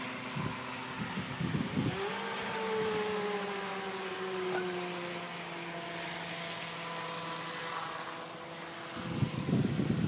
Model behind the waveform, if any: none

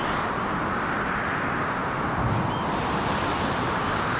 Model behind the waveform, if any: none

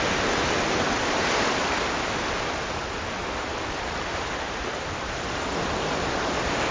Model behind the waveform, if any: none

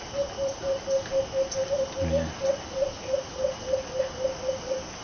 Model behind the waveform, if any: none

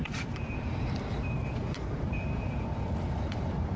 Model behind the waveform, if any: vocoder, BigVGAN v2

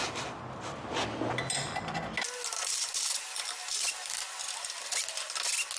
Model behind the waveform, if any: none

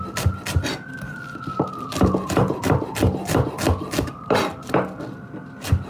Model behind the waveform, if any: none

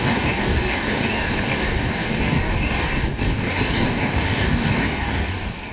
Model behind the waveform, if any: codec, DAC